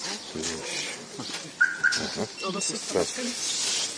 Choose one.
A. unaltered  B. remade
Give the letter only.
A